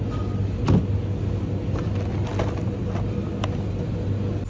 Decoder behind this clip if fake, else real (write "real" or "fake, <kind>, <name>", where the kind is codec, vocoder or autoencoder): real